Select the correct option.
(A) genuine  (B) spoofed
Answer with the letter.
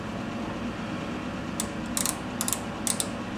A